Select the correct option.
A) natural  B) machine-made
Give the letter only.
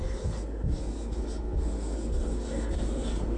B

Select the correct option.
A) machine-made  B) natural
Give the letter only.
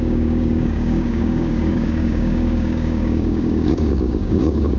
A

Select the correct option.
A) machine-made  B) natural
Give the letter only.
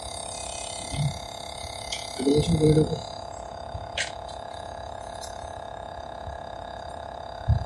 A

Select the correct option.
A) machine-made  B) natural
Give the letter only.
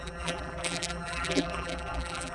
A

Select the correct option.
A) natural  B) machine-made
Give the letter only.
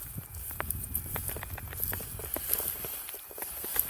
A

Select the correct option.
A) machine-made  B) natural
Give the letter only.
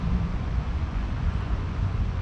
A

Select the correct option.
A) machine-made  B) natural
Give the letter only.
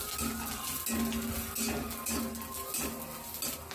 B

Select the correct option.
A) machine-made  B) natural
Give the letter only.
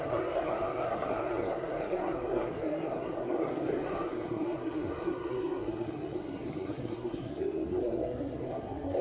A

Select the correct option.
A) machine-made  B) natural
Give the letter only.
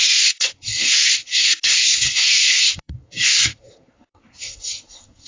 A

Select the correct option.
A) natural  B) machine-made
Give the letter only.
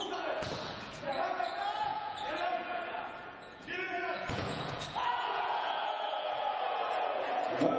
B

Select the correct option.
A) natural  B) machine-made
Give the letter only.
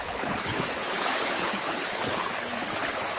B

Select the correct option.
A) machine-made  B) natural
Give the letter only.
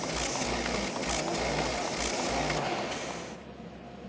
B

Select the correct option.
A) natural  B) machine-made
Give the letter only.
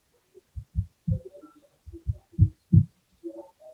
A